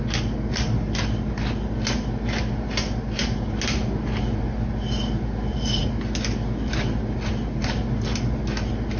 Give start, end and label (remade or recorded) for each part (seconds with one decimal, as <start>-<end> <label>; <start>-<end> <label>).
0.0-9.0 recorded